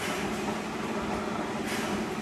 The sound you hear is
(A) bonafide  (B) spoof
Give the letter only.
A